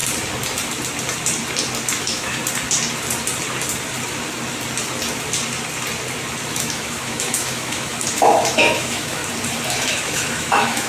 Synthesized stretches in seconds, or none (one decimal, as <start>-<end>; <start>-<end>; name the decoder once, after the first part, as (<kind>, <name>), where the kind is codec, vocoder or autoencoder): 2.0-2.4 (autoencoder, DAC-VAE); 6.5-9.2; 9.9-10.9